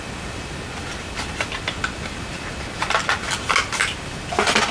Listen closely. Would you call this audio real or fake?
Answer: real